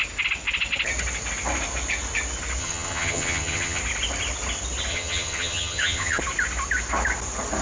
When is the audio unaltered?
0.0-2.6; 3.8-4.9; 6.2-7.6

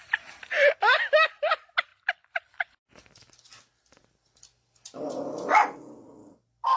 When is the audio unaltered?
0.0-1.9; 3.6-4.0

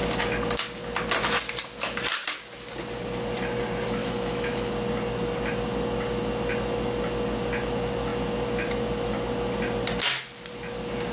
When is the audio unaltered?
0.0-4.0; 4.7-11.1